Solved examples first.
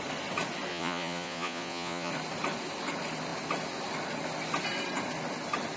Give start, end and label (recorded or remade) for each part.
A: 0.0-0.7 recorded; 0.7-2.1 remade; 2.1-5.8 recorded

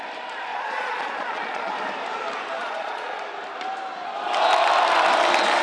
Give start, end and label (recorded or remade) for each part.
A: 0.0-0.5 recorded; 0.5-1.7 remade; 1.7-2.6 recorded; 2.6-3.2 remade; 3.2-5.6 recorded

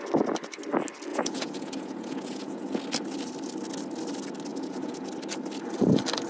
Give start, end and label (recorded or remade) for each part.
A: 0.0-1.1 recorded; 1.1-2.8 remade; 2.8-4.5 recorded; 4.5-5.1 remade; 5.1-6.3 recorded